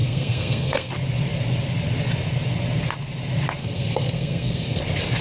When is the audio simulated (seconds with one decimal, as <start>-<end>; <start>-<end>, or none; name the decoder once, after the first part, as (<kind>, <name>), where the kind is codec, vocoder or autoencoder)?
0.0-0.9 (codec, SNAC); 3.6-4.8

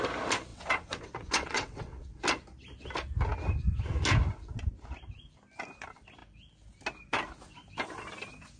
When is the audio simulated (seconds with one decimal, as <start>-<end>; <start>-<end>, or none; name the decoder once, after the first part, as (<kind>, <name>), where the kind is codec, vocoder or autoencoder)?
0.5-2.2 (vocoder, WaveNeXt)